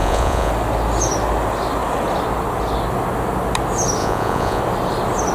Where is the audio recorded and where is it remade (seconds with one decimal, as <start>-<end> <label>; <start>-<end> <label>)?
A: 0.0-0.5 remade; 0.5-4.0 recorded; 4.0-4.6 remade; 4.6-5.3 recorded

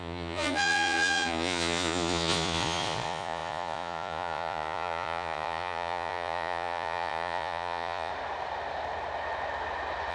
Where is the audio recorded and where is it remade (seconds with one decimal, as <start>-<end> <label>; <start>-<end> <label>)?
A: 0.0-8.1 remade; 8.1-10.1 recorded

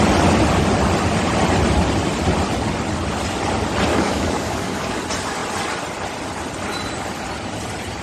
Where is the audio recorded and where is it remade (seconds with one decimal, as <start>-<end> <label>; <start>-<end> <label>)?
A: 0.0-3.9 recorded; 3.9-5.0 remade; 5.0-8.0 recorded